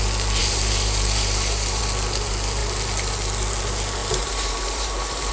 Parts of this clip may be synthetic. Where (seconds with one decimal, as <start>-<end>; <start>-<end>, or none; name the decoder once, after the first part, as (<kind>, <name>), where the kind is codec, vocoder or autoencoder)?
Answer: 0.4-1.8 (vocoder, BigVGAN v2); 4.0-5.3